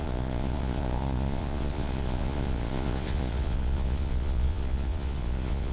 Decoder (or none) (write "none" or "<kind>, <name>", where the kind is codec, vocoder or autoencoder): vocoder, Vocos